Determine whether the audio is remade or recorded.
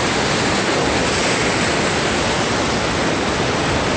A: recorded